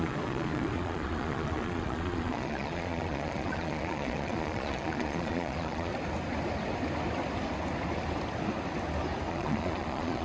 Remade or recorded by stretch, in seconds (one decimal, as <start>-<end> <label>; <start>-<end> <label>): 0.0-5.9 remade; 5.9-9.3 recorded; 9.3-10.2 remade